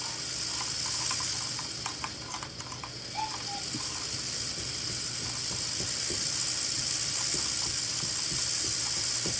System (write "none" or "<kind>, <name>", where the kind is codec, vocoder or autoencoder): none